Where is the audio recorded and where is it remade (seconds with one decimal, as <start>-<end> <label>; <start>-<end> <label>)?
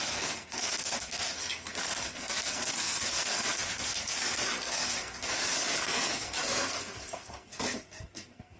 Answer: 0.0-8.6 remade